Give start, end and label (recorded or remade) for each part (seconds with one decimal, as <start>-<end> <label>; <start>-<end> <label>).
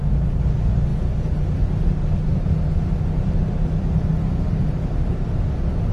0.0-4.2 recorded; 4.2-4.7 remade; 4.7-5.9 recorded